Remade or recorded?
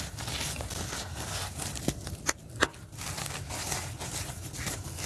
recorded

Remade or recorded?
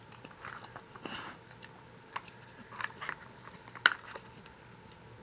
recorded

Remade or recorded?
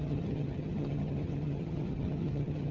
remade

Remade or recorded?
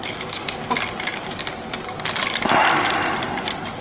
recorded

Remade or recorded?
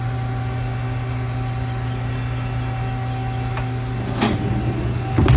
recorded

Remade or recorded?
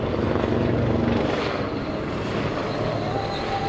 recorded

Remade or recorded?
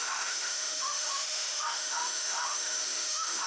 remade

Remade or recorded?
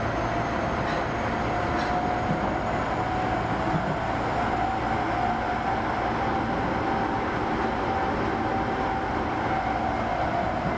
recorded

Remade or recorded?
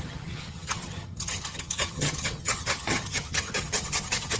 remade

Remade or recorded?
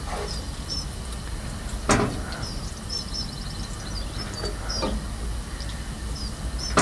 recorded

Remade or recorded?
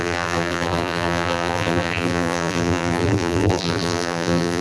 remade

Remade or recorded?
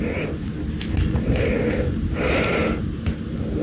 recorded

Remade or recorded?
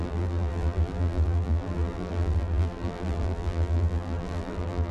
remade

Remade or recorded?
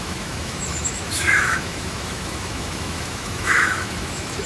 remade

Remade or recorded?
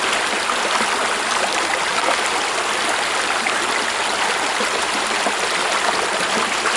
recorded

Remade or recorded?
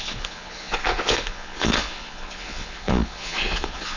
remade